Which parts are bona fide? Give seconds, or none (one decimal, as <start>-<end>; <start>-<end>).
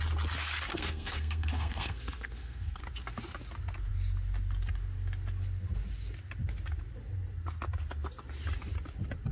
0.0-0.7; 2.8-9.3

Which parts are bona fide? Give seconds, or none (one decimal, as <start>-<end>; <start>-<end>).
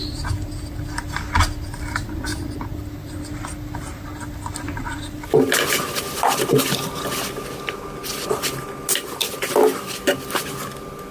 0.0-11.1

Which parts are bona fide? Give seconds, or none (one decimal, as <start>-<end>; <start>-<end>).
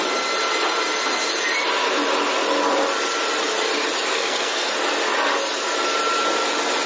0.0-4.1; 4.7-6.9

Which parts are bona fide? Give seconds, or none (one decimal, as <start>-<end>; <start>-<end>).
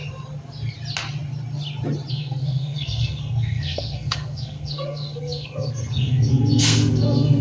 0.0-2.1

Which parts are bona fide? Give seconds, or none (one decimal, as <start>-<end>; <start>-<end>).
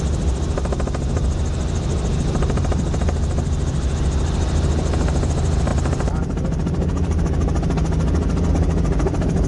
0.0-9.5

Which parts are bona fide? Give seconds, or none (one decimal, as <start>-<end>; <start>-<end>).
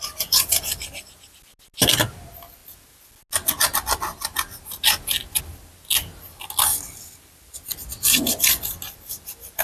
0.0-9.6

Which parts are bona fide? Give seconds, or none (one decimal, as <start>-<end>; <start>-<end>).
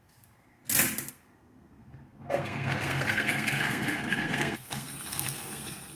0.6-1.1